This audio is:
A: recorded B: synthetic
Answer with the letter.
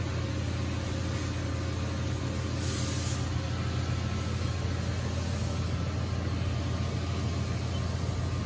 A